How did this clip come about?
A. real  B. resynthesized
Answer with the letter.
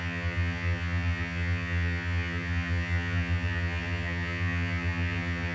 B